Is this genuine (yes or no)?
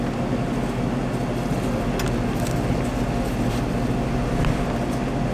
yes